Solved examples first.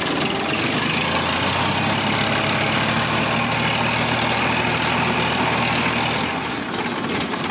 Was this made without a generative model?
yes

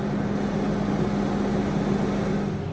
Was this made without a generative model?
yes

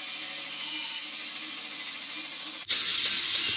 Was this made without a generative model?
yes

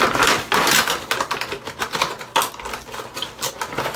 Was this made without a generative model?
yes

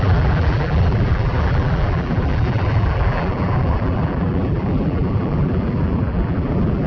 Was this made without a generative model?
no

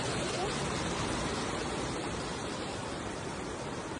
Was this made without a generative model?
no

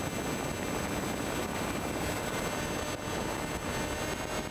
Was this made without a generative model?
yes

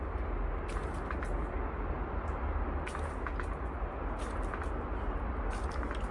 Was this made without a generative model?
yes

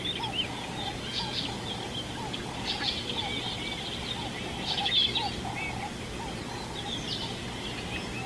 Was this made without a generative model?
yes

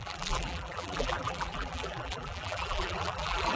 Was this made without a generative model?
no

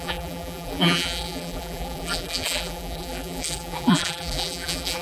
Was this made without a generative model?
no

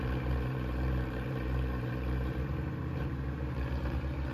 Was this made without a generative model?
no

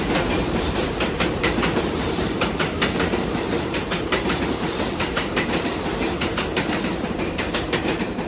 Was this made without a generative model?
no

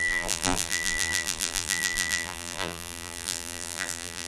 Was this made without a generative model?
no